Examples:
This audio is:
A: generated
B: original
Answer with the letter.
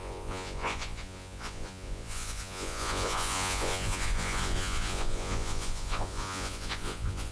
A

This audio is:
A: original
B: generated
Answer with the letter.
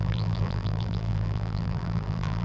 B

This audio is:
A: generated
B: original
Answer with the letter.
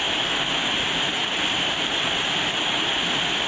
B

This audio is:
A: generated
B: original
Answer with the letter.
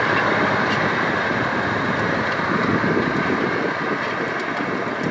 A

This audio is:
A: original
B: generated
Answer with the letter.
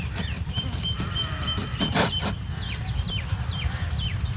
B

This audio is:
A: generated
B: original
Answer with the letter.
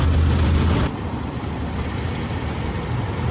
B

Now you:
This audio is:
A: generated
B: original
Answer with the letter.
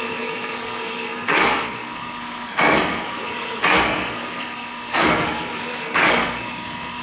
A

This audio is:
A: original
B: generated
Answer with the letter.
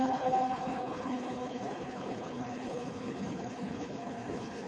B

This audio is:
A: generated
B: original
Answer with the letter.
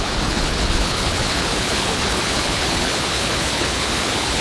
A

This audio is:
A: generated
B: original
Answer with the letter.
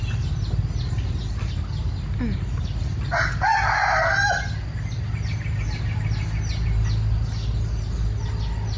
B